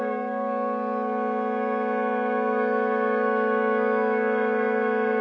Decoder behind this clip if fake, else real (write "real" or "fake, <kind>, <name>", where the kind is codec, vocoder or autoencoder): real